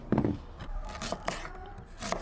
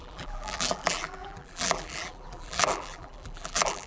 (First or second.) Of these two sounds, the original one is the first